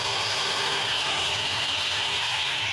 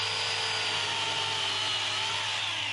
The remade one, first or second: first